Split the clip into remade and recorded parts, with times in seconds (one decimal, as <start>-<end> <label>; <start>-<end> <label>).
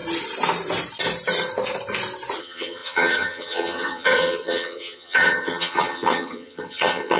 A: 0.0-2.4 recorded; 2.4-7.2 remade